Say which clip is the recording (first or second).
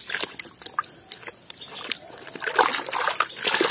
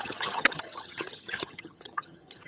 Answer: first